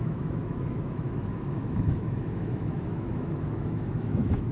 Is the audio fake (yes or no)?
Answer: yes